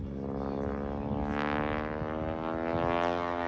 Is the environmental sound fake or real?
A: real